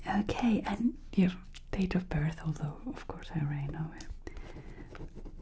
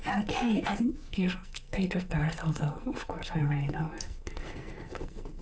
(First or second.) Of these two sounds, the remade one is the second